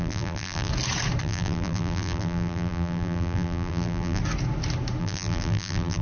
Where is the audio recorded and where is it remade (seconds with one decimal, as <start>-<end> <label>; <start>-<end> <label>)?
0.0-0.7 remade; 0.7-1.2 recorded; 1.2-4.2 remade; 4.2-5.0 recorded; 5.0-6.0 remade

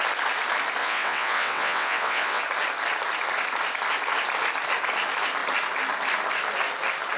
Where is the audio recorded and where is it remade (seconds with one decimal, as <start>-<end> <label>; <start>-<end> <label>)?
0.0-0.8 recorded; 0.8-2.4 remade; 2.4-7.2 recorded

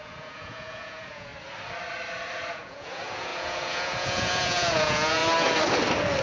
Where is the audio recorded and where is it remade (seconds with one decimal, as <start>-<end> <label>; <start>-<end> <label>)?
0.0-1.3 remade; 1.3-2.5 recorded; 2.5-5.2 remade; 5.2-6.2 recorded

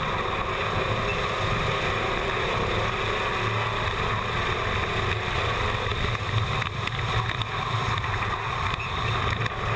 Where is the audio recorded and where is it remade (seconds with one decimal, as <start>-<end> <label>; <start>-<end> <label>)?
0.0-1.1 recorded; 1.1-3.3 remade; 3.3-5.9 recorded; 5.9-9.8 remade

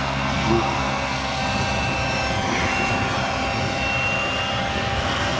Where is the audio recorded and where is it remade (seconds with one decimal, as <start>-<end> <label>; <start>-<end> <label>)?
0.0-1.4 remade; 1.4-4.6 recorded; 4.6-5.4 remade